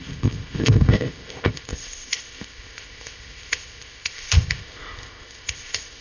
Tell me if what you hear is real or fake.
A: fake